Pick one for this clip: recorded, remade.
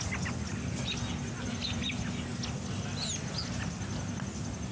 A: recorded